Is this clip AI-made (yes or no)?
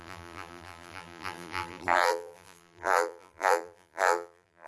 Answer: yes